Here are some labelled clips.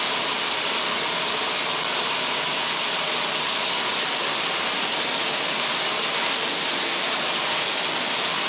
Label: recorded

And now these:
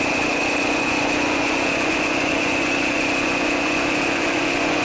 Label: remade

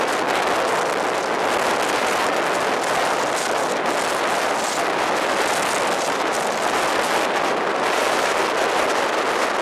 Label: recorded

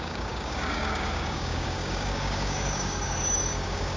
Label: remade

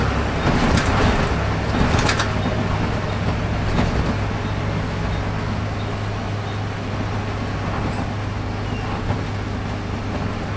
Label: recorded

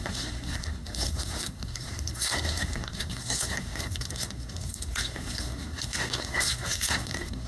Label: remade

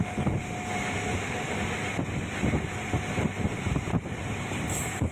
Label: recorded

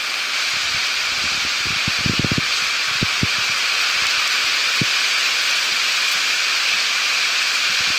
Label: recorded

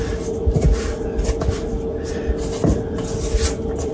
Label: recorded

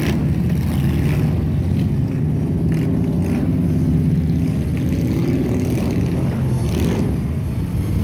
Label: recorded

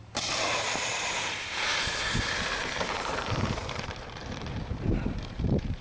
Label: remade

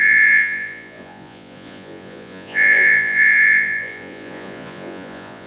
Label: remade